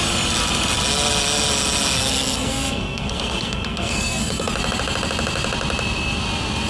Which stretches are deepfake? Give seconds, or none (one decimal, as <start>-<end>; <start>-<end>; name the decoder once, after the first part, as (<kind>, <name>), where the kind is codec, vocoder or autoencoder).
2.1-4.5 (codec, SNAC)